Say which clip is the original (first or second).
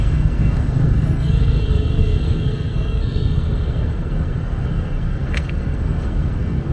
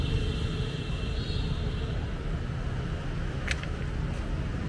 second